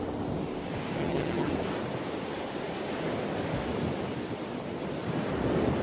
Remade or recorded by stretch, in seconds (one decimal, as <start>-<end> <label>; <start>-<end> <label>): 0.0-1.0 recorded; 1.0-1.5 remade; 1.5-5.8 recorded